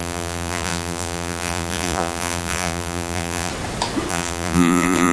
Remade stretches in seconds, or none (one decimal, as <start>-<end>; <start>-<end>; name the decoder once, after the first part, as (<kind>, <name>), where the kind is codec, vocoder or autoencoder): 0.0-3.5 (vocoder, BigVGAN v2); 4.1-5.1